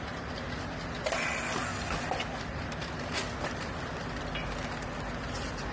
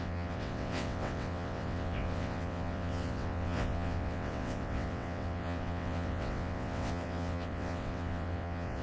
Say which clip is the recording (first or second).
first